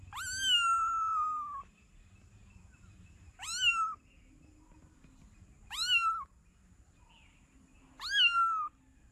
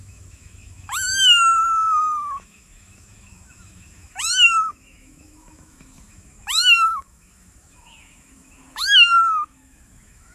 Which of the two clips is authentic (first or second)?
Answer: first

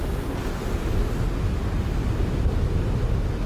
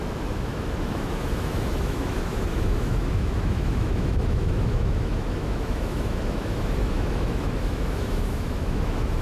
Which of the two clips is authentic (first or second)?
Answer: first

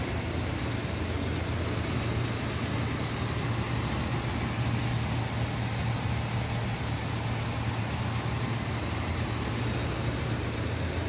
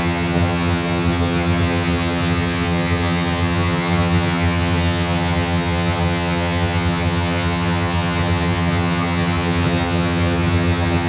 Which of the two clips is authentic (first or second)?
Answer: first